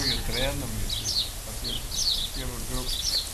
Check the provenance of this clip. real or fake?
real